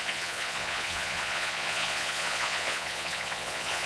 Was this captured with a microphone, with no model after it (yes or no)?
no